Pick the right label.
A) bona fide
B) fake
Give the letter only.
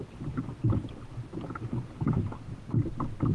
A